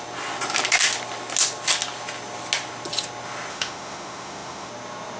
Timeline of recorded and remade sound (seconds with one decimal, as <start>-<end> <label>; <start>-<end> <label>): 0.0-3.5 recorded; 3.5-4.7 remade; 4.7-5.2 recorded